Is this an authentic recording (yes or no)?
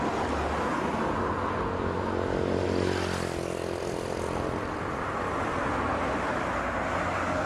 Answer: yes